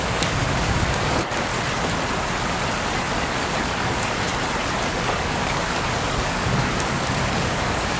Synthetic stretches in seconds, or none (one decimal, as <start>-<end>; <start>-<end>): 0.0-1.5; 3.1-4.3; 4.9-8.0